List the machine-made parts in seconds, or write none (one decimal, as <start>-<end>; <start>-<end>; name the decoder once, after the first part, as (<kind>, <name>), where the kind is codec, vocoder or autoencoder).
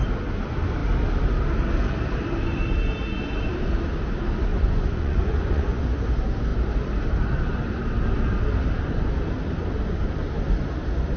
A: 4.5-5.8 (vocoder, Vocos)